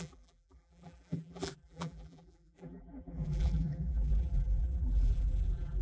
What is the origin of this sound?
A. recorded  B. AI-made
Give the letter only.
B